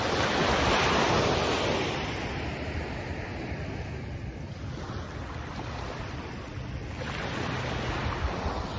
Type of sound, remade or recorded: recorded